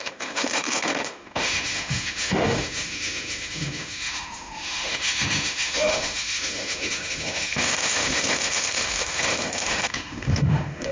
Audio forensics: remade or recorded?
remade